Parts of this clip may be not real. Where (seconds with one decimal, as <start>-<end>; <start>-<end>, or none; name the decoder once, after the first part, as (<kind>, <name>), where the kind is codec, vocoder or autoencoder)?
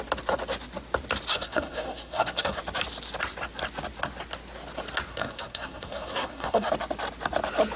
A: 1.3-2.6 (codec, SNAC); 5.1-6.7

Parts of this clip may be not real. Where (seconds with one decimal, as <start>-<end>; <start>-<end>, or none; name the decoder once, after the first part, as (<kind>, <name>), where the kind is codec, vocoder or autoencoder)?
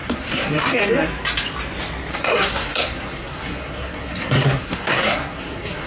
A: 0.0-0.8 (codec, SNAC); 2.1-5.9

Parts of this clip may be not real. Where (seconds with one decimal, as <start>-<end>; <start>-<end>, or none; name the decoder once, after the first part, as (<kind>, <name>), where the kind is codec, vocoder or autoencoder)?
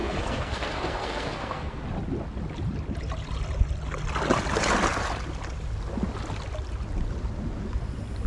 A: 0.0-1.8 (codec, SNAC)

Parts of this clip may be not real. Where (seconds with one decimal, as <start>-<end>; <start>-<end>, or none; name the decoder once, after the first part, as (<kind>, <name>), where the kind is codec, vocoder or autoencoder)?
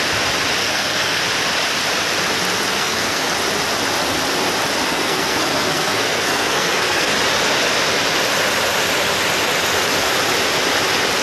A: 0.6-1.2 (codec, SNAC); 2.7-3.3; 4.9-7.1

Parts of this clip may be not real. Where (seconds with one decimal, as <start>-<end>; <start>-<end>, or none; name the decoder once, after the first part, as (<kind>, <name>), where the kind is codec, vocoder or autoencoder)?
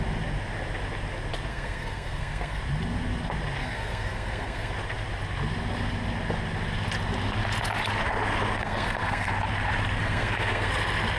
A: 1.5-2.6 (codec, SNAC); 3.6-4.7; 8.6-9.3; 10.0-10.7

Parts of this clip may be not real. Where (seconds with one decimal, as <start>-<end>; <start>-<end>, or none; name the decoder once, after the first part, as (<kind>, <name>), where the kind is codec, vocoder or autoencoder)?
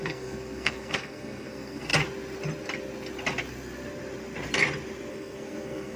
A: 0.0-1.9 (codec, SNAC); 5.1-6.0